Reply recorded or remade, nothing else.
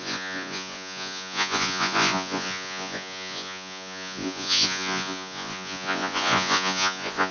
remade